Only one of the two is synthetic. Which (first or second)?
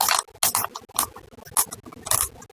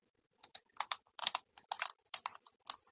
second